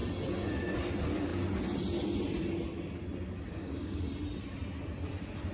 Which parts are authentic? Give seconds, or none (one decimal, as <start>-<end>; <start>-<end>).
0.0-3.5; 4.0-5.5